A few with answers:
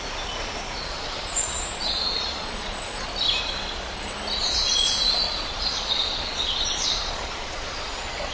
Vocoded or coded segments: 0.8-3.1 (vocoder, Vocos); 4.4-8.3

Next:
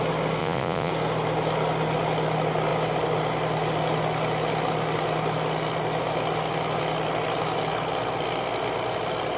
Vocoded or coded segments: 0.4-0.9 (vocoder, Vocos)

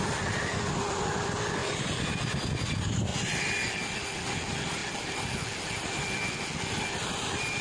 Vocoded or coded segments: none

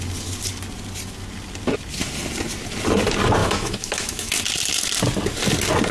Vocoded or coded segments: 3.4-4.3 (autoencoder, DAC-VAE)

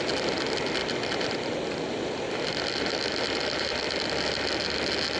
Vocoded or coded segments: 0.8-3.9 (vocoder, BigVGAN v2)

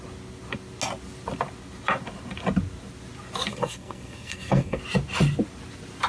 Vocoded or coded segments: 3.5-4.8 (codec, SNAC)

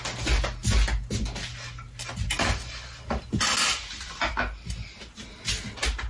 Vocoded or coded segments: none

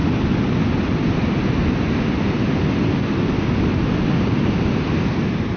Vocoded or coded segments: none